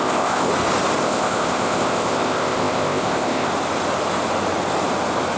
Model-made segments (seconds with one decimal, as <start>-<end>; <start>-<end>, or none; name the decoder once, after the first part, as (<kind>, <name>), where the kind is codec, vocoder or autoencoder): 0.0-0.5 (codec, ZipCodec); 1.0-3.5